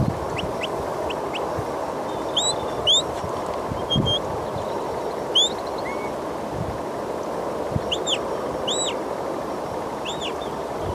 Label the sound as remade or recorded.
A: recorded